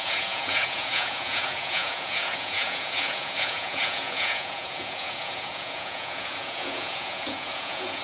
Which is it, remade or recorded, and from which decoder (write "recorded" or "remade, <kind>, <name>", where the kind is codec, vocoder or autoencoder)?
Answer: remade, vocoder, Vocos